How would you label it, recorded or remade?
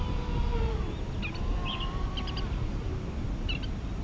recorded